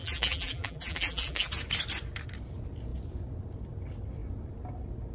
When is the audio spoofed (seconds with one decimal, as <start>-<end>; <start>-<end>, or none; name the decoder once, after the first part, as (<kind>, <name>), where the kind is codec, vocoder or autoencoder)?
0.0-1.5 (vocoder, BigVGAN v2)

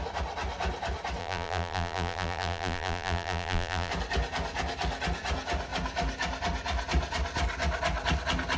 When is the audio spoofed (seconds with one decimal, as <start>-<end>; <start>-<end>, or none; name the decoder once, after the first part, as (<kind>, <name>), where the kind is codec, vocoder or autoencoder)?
1.2-3.9 (vocoder, BigVGAN v2)